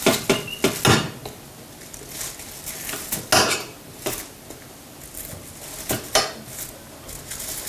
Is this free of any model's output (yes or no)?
yes